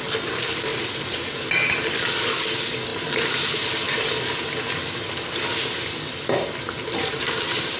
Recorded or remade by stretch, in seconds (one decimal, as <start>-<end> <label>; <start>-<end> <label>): 0.0-0.7 recorded; 0.7-1.4 remade; 1.4-7.8 recorded